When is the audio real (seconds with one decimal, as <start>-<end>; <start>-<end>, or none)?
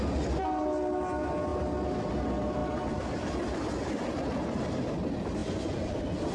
0.0-6.3